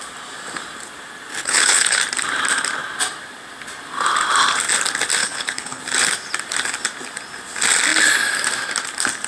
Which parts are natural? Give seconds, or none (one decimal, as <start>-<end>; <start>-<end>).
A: 0.0-1.3; 2.0-5.2; 5.8-9.3